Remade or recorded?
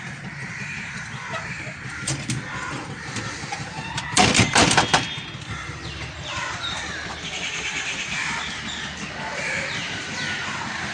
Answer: remade